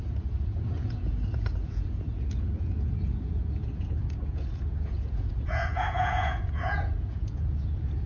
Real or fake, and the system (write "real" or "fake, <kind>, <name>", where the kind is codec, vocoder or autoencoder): fake, vocoder, Vocos